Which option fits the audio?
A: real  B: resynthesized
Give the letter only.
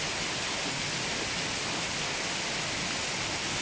A